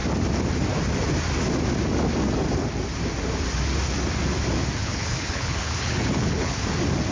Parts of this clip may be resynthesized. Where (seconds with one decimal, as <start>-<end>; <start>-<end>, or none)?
4.8-6.6